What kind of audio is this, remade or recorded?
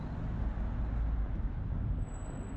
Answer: recorded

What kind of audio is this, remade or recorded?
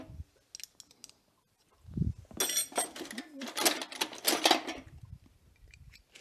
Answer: recorded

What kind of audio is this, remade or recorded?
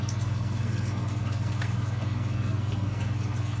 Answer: remade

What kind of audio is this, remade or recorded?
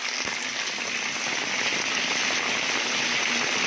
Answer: recorded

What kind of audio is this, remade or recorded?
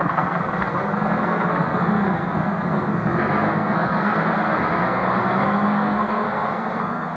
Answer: remade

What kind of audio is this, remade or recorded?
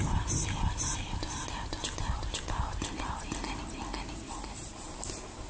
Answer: recorded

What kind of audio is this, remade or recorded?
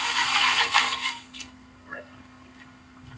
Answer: remade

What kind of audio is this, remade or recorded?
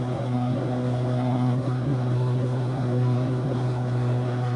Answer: remade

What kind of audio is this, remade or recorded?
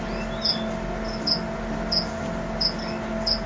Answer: recorded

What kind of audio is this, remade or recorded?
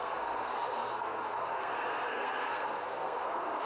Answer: remade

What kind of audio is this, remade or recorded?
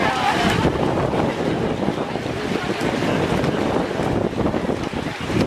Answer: recorded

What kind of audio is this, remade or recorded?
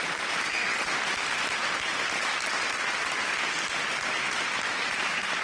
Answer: recorded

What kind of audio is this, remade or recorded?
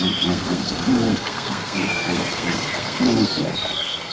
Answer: remade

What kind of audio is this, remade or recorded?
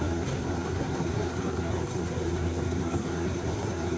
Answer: remade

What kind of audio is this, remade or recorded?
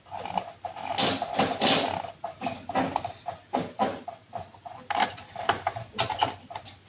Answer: recorded